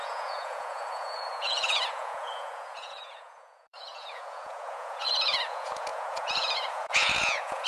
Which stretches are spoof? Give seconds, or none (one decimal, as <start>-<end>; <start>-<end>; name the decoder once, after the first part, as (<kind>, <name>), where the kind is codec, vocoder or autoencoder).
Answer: 0.0-7.7 (vocoder, Vocos)